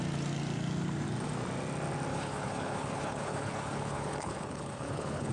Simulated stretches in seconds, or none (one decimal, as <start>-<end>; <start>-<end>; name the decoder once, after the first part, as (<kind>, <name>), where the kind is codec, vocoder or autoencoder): 2.1-5.3 (codec, HILCodec)

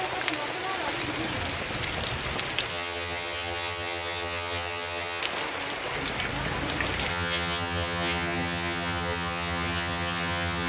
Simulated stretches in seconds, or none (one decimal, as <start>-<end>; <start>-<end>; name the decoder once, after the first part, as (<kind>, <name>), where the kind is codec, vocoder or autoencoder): 2.7-5.2 (vocoder, HiFi-GAN); 7.1-10.7

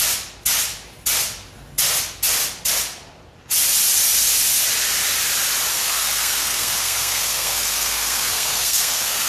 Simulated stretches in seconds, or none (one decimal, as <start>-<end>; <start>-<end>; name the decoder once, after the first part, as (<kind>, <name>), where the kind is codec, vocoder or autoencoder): 5.7-9.3 (codec, SNAC)